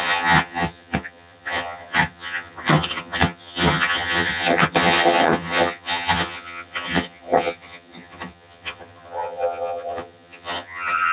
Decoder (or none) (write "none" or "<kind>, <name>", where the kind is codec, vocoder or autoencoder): vocoder, HiFi-GAN